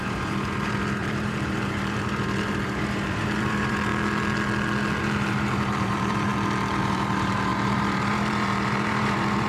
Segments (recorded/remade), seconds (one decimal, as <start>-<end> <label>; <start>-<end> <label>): 0.0-3.9 remade; 3.9-5.0 recorded; 5.0-6.3 remade; 6.3-6.8 recorded; 6.8-9.5 remade